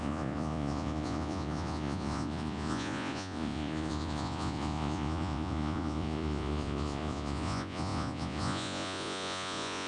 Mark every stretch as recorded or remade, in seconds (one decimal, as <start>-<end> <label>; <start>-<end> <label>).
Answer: 0.0-9.9 remade